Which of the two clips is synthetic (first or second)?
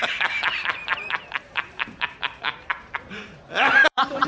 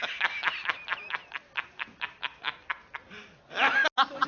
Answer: first